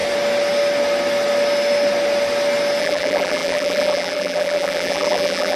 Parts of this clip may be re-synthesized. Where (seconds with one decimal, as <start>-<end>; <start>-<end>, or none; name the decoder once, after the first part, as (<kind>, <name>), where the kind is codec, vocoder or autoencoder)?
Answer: 2.8-5.6 (vocoder, BigVGAN v2)